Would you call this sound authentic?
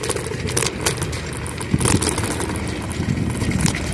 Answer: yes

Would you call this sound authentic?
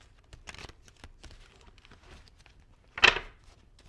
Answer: yes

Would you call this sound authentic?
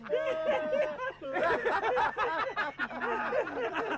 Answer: yes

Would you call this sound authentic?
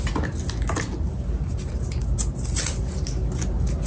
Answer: yes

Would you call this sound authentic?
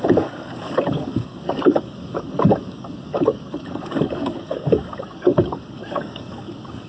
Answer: no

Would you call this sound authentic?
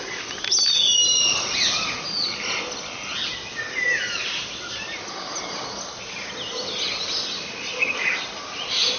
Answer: yes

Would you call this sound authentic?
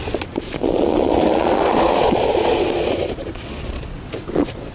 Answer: no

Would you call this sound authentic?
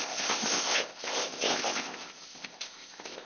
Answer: no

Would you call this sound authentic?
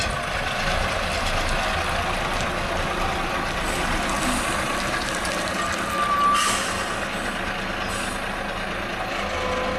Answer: yes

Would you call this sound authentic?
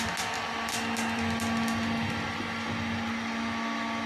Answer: yes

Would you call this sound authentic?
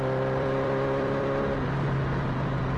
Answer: no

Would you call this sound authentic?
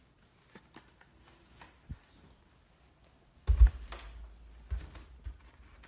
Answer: yes